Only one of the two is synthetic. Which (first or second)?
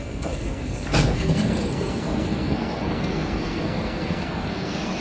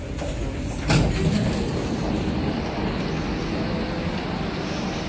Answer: first